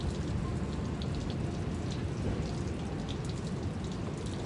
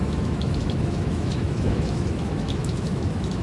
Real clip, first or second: first